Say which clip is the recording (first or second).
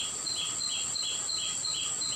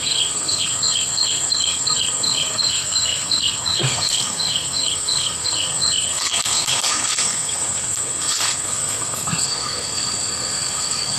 first